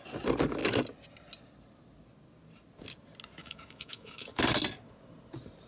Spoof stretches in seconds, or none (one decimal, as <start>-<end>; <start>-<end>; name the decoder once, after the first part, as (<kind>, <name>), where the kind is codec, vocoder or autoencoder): 3.4-4.4 (autoencoder, DAC-VAE)